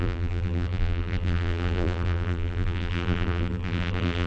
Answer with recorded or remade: remade